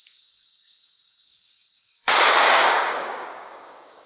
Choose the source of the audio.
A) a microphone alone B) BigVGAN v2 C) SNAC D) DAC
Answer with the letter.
D